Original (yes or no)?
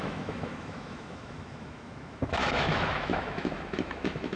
no